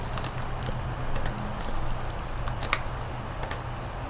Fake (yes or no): no